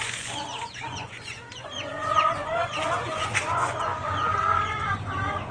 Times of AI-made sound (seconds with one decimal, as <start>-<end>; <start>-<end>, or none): 0.0-5.5